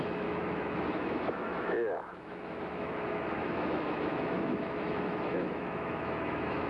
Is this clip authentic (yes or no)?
no